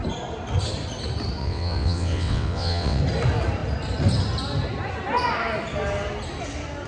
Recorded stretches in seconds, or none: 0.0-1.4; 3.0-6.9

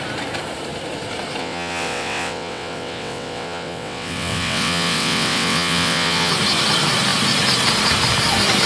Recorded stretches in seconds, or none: 0.0-1.4; 6.3-8.7

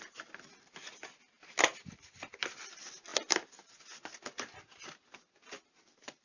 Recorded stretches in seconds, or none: 0.0-6.2

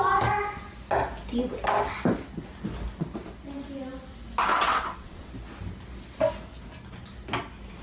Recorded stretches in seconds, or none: 0.0-4.5; 5.3-7.8